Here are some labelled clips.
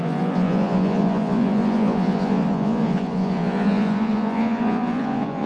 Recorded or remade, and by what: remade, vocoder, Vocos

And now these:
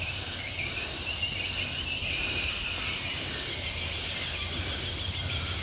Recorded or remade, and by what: recorded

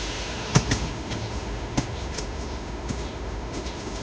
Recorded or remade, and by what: remade, autoencoder, DAC-VAE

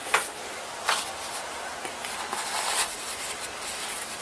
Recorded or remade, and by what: recorded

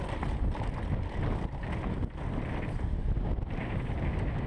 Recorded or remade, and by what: recorded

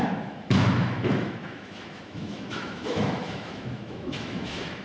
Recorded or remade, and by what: remade, autoencoder, DAC-VAE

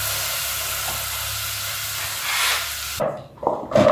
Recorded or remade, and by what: recorded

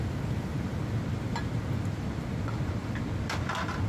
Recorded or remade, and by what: recorded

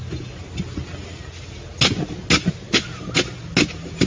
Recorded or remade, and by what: recorded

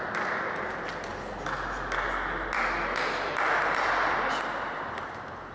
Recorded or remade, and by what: recorded